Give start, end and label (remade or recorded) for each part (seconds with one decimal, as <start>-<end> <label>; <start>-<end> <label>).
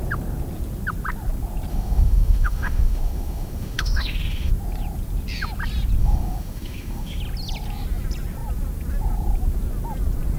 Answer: 0.0-1.7 recorded; 1.7-4.5 remade; 4.5-6.0 recorded; 6.0-7.2 remade; 7.2-10.4 recorded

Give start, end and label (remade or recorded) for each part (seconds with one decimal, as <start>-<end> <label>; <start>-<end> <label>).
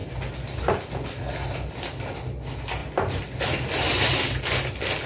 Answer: 0.0-5.1 recorded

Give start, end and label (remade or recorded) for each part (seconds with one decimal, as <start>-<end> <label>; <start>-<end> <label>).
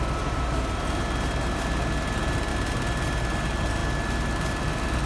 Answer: 0.0-5.1 recorded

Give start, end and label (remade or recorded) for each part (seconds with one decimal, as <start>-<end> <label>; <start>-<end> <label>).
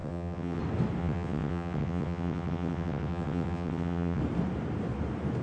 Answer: 0.0-0.6 remade; 0.6-1.0 recorded; 1.0-4.2 remade; 4.2-5.4 recorded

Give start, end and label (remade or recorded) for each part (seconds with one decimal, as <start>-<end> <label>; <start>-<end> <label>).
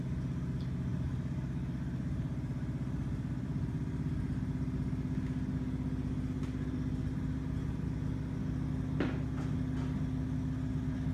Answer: 0.0-11.1 recorded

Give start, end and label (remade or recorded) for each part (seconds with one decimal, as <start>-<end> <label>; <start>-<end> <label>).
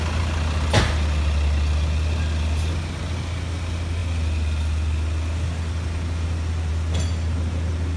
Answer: 0.0-8.0 recorded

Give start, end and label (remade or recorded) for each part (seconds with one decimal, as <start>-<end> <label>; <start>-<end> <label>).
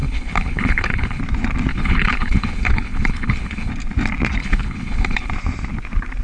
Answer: 0.0-1.2 remade; 1.2-1.7 recorded; 1.7-3.7 remade; 3.7-4.4 recorded; 4.4-5.3 remade; 5.3-6.2 recorded